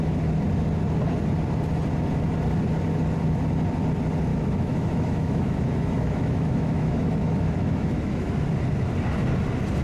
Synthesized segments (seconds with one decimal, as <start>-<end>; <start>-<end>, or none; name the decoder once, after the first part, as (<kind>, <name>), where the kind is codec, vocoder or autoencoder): 4.3-8.3 (autoencoder, DAC-VAE)